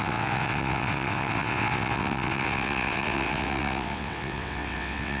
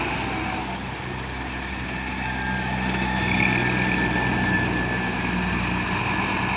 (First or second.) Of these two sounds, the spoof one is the first